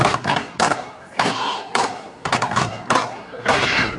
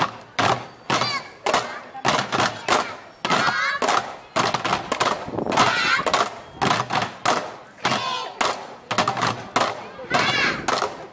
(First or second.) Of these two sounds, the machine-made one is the first